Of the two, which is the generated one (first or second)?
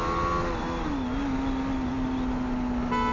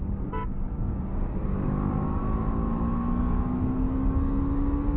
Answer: second